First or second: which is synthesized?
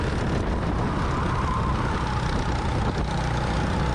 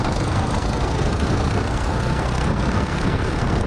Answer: second